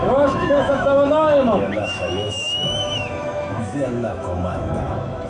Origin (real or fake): fake